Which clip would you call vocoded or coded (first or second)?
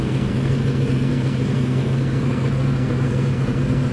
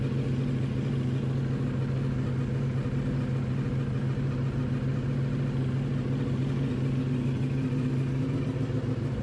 first